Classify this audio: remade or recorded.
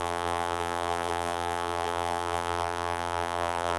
remade